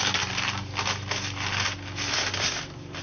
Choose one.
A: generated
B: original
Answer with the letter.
B